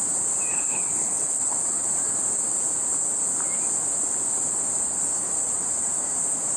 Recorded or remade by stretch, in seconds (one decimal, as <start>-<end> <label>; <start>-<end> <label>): 0.0-0.5 recorded; 0.5-1.6 remade; 1.6-6.6 recorded